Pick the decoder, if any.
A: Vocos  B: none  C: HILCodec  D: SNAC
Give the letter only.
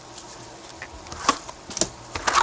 B